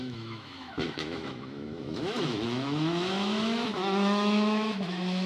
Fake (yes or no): yes